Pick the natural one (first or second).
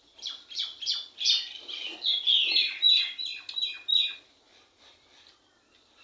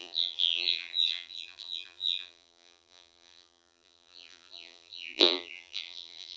first